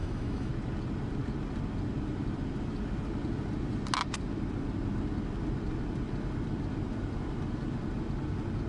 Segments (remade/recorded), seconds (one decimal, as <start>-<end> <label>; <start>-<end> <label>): 0.0-0.5 remade; 0.5-8.7 recorded